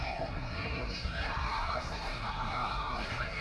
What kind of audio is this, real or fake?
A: fake